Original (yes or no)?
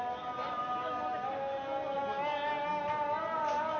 yes